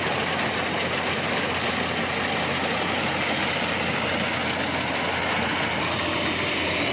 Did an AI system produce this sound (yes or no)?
no